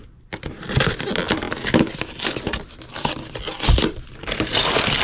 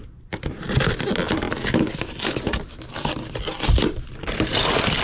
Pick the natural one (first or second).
first